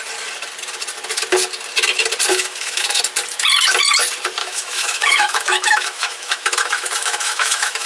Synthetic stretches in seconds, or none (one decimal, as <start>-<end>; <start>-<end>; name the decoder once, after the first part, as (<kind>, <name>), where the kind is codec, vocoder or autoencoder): 2.3-3.0 (autoencoder, DAC-VAE); 4.4-7.9

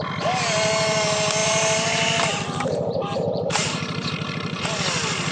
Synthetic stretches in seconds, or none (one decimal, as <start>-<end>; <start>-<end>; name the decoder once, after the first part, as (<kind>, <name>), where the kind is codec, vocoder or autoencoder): 1.4-4.6 (vocoder, BigVGAN v2)

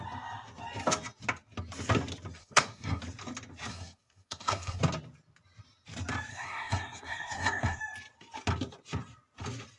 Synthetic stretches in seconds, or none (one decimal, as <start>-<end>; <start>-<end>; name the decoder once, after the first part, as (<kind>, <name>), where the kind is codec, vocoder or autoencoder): 2.4-3.0 (codec, SNAC); 3.7-4.8; 6.3-7.8

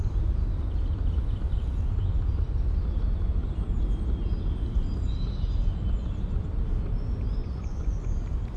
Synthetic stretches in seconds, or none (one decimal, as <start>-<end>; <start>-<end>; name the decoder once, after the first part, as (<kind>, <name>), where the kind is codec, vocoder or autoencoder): 7.4-8.2 (vocoder, Vocos)

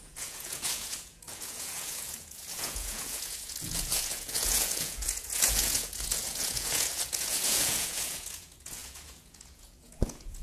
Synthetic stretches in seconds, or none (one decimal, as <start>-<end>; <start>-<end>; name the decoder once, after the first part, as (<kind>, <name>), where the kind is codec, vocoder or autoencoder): 0.0-10.4 (vocoder, Vocos)

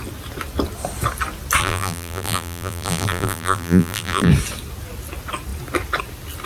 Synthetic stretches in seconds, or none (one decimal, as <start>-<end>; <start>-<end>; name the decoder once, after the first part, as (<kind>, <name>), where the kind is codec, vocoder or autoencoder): 1.6-4.3 (vocoder, BigVGAN v2)

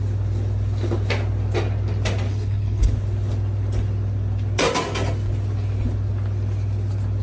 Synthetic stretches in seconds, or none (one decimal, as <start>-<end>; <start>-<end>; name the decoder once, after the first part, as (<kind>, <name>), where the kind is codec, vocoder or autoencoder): 2.3-2.9 (codec, HILCodec)

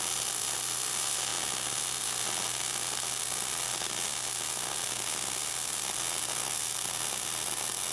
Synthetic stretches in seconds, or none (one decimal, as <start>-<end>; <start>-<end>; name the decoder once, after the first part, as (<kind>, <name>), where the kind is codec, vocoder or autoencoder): none